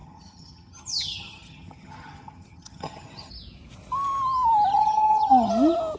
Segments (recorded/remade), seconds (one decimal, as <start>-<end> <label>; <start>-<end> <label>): 0.0-3.3 remade; 3.3-4.7 recorded; 4.7-5.5 remade; 5.5-6.0 recorded